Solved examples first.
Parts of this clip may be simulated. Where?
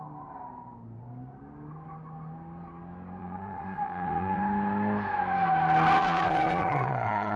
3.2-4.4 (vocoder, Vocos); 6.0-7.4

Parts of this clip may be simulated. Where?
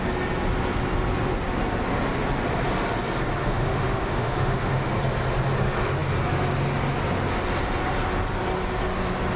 3.4-4.9 (autoencoder, DAC-VAE)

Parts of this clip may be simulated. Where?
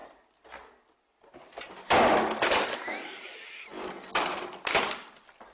none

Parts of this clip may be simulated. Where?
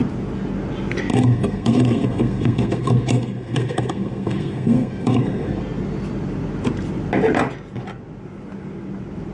1.1-5.6 (codec, SNAC)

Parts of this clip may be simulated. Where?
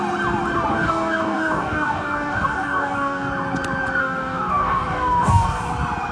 0.7-3.3 (codec, DAC); 4.0-5.6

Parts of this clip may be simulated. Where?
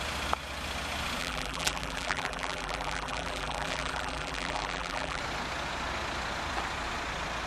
1.2-5.2 (vocoder, BigVGAN v2)